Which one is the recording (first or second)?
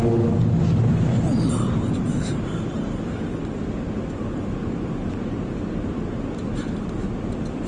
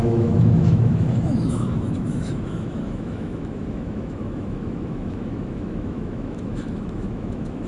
first